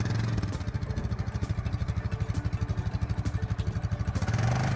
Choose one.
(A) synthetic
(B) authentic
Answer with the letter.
B